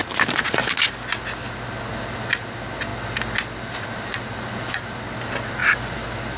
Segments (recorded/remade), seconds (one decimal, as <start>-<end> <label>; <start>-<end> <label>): 0.0-6.4 recorded

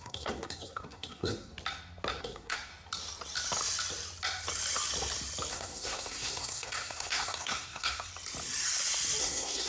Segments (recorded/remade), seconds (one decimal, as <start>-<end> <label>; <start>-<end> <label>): 0.0-1.5 remade; 1.5-2.2 recorded; 2.2-2.7 remade; 2.7-5.5 recorded; 5.5-8.1 remade; 8.1-9.2 recorded; 9.2-9.7 remade

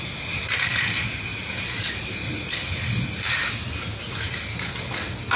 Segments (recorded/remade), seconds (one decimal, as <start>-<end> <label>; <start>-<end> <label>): 0.0-5.4 recorded

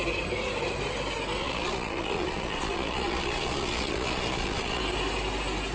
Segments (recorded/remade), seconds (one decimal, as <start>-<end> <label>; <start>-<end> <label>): 0.0-1.4 recorded; 1.4-4.8 remade; 4.8-5.7 recorded

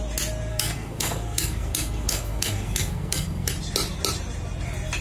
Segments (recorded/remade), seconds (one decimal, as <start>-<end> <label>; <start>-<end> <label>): 0.0-0.5 recorded; 0.5-3.5 remade; 3.5-5.0 recorded

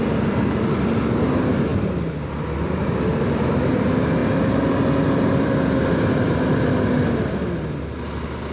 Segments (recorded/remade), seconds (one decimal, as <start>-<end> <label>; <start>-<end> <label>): 0.0-8.5 recorded

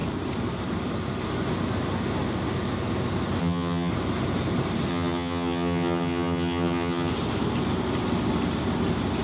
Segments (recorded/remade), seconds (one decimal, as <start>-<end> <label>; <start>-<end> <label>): 0.0-3.4 recorded; 3.4-3.9 remade; 3.9-4.9 recorded; 4.9-7.1 remade; 7.1-9.2 recorded